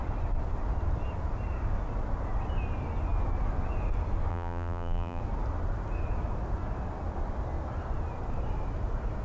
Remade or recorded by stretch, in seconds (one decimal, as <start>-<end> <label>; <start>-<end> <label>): 0.0-4.3 recorded; 4.3-5.2 remade; 5.2-9.2 recorded